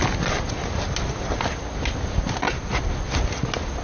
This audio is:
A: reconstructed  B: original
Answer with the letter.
B